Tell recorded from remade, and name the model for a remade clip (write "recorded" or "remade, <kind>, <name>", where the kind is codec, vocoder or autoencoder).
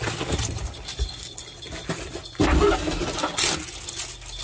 recorded